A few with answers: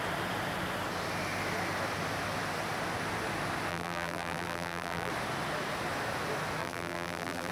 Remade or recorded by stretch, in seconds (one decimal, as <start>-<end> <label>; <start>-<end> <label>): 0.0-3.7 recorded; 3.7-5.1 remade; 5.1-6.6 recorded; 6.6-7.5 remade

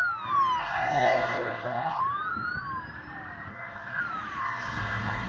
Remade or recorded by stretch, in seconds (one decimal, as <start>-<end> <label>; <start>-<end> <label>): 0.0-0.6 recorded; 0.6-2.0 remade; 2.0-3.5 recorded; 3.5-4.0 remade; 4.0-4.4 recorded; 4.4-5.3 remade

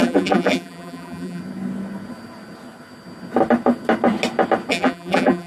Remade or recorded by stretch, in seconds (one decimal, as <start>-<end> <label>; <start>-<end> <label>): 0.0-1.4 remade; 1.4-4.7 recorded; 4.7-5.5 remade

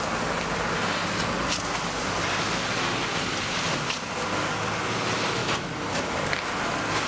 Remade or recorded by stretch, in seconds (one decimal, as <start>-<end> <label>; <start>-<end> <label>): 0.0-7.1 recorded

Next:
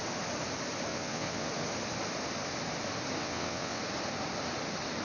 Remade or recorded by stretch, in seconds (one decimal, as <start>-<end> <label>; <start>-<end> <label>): 0.0-0.9 recorded; 0.9-1.5 remade; 1.5-3.2 recorded; 3.2-3.8 remade; 3.8-5.0 recorded

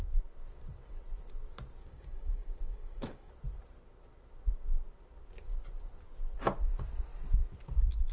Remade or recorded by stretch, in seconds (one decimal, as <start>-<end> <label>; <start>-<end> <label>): 0.0-1.8 recorded; 1.8-3.3 remade; 3.3-8.1 recorded

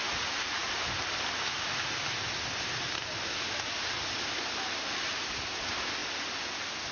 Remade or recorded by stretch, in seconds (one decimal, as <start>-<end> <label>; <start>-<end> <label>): 0.0-0.7 remade; 0.7-6.9 recorded